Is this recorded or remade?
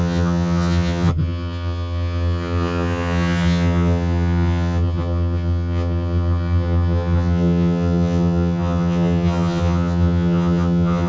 remade